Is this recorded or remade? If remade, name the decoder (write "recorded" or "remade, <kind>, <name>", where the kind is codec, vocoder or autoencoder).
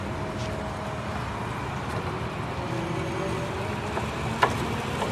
recorded